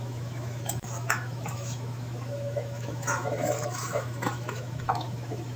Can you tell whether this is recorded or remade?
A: remade